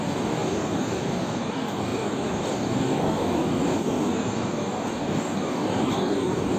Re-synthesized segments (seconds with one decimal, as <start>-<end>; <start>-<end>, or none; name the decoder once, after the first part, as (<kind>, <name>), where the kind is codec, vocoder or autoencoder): 0.0-6.6 (codec, DAC)